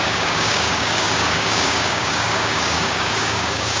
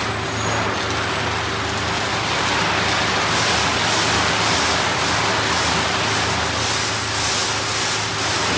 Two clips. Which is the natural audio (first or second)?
second